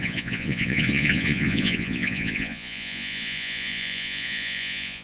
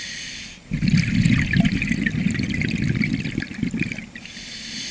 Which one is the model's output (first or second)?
first